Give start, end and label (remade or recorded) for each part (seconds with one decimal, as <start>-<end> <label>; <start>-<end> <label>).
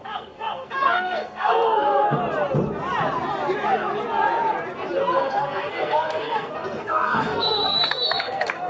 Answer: 0.0-2.2 remade; 2.2-5.0 recorded; 5.0-8.7 remade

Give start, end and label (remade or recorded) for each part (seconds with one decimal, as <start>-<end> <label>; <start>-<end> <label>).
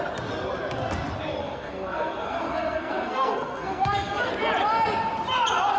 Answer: 0.0-1.4 recorded; 1.4-4.3 remade; 4.3-5.8 recorded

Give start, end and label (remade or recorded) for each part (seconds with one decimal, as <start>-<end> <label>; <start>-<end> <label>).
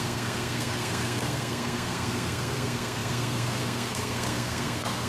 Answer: 0.0-5.1 remade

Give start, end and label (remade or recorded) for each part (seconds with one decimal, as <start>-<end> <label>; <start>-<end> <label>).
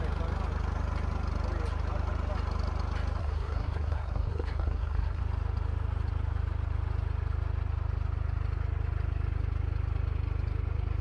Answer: 0.0-3.2 recorded; 3.2-5.2 remade; 5.2-11.0 recorded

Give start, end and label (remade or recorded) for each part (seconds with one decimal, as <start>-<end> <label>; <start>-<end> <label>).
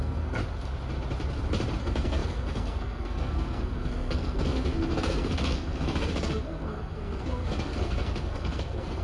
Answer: 0.0-0.4 remade; 0.4-1.8 recorded; 1.8-9.0 remade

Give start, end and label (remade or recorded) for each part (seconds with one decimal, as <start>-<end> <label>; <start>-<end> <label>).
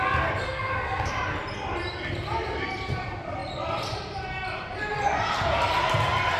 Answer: 0.0-0.4 recorded; 0.4-1.1 remade; 1.1-6.4 recorded